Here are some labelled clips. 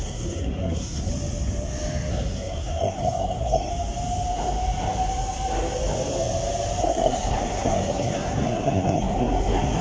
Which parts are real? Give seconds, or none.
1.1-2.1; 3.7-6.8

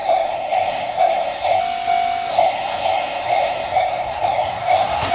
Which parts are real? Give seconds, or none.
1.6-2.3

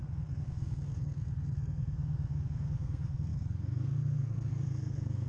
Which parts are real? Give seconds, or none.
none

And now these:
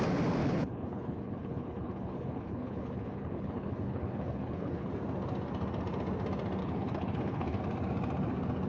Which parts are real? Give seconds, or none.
0.0-0.4; 4.9-6.6; 7.6-8.7